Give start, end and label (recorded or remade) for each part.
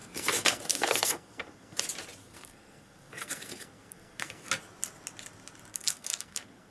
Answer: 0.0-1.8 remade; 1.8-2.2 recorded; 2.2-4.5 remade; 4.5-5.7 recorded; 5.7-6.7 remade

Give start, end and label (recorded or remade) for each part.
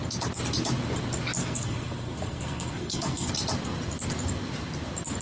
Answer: 0.0-1.4 recorded; 1.4-3.3 remade; 3.3-5.2 recorded